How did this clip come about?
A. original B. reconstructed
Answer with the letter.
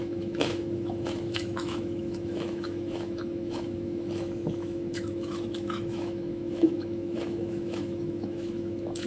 B